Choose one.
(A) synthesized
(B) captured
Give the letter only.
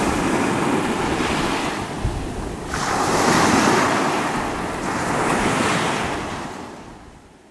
B